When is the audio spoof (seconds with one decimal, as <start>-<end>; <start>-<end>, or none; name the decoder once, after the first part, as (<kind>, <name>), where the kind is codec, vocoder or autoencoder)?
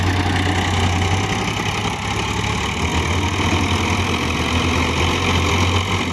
none